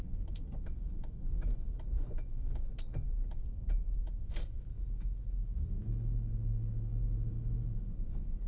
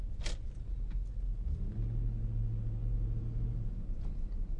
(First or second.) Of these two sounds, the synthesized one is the first